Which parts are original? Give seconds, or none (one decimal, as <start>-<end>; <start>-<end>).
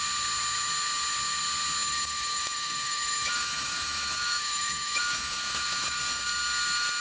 0.0-1.8; 6.0-7.0